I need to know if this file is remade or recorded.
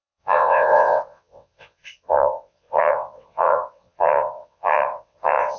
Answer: remade